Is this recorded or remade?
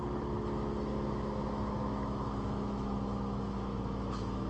remade